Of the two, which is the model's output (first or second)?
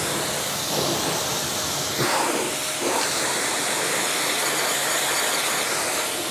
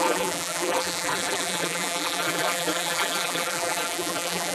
second